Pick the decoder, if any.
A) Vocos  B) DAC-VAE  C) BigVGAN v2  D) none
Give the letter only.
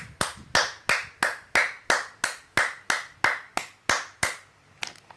D